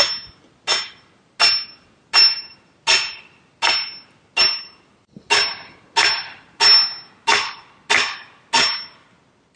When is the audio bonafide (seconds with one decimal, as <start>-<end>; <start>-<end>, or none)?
0.0-9.6